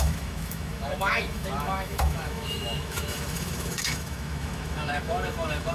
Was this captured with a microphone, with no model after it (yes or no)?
no